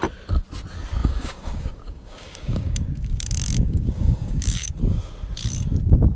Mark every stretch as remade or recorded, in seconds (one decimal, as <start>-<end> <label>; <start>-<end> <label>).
0.0-1.0 recorded; 1.0-4.7 remade; 4.7-6.2 recorded